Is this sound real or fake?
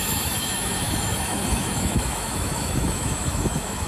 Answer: fake